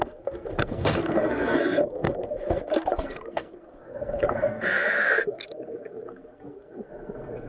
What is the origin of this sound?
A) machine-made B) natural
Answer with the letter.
A